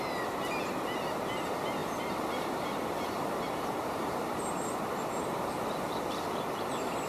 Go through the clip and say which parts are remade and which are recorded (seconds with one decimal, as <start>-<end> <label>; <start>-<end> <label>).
0.0-1.8 recorded; 1.8-5.6 remade; 5.6-7.1 recorded